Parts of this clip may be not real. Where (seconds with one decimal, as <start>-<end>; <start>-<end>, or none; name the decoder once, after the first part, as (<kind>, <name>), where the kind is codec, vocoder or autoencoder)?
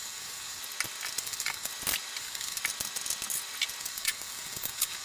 0.0-0.6 (codec, DAC); 1.2-1.7; 2.2-2.6; 3.8-5.0